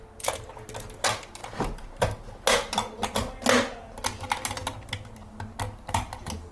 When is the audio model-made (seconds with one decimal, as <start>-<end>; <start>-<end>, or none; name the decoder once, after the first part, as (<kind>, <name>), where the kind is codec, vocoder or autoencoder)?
none